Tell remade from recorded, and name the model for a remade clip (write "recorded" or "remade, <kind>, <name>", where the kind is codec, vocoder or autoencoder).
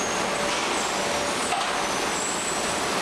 recorded